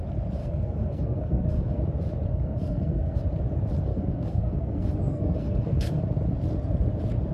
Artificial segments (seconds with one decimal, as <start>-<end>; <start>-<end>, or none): 0.4-1.8; 2.3-3.2; 3.9-6.0